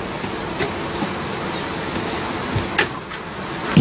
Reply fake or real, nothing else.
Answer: real